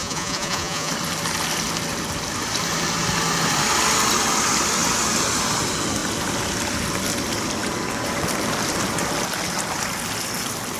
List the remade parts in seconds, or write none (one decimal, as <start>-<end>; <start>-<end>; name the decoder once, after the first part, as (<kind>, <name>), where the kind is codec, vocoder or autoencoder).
0.0-0.9 (vocoder, Vocos)